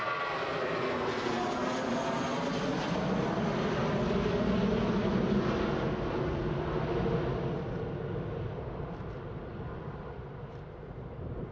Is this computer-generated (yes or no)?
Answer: no